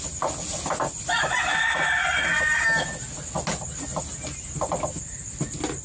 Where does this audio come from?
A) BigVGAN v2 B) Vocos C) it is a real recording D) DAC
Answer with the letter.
C